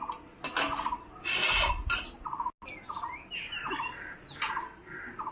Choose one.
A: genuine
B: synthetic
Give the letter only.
A